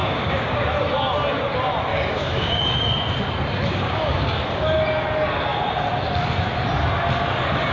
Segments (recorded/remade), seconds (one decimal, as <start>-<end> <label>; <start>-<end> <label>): 0.0-0.6 remade; 0.6-1.9 recorded; 1.9-2.6 remade; 2.6-3.7 recorded; 3.7-4.4 remade; 4.4-7.7 recorded